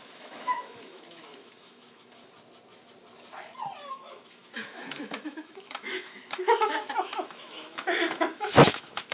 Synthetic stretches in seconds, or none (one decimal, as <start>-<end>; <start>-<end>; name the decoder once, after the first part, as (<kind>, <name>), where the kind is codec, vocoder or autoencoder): 0.0-2.2 (autoencoder, DAC-VAE); 3.9-9.1